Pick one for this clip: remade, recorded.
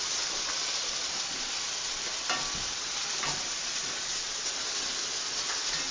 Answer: recorded